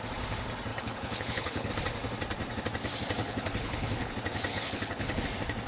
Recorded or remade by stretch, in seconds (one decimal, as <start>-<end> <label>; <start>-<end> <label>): 0.0-0.7 recorded; 0.7-1.7 remade; 1.7-3.2 recorded; 3.2-4.1 remade; 4.1-4.5 recorded; 4.5-5.2 remade; 5.2-5.7 recorded